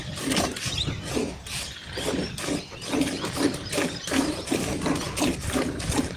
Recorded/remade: recorded